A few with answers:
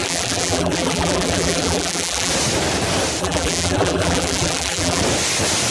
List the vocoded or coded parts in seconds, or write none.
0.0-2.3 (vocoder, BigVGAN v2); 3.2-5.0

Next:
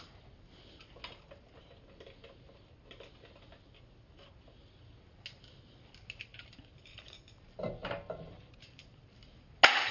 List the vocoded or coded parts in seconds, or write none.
6.3-7.2 (vocoder, BigVGAN v2); 7.8-9.0

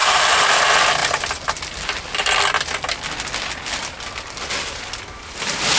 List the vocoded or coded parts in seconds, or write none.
0.0-0.5 (vocoder, BigVGAN v2)

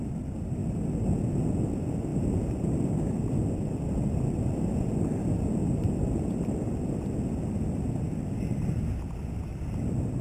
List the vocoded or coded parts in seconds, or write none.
5.6-7.4 (vocoder, BigVGAN v2); 9.5-10.2